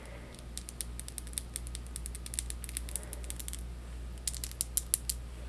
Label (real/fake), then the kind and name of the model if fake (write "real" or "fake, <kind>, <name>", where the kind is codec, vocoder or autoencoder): real